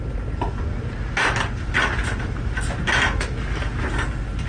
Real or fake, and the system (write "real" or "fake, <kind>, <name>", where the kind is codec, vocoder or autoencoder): real